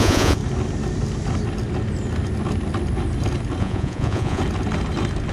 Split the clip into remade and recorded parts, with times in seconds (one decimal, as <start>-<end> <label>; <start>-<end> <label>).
0.0-0.4 remade; 0.4-3.6 recorded; 3.6-4.4 remade; 4.4-5.3 recorded